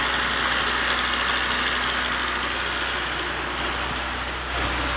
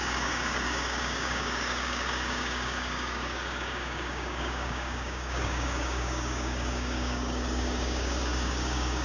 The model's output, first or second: second